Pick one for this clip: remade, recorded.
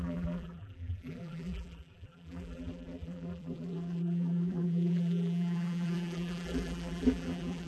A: remade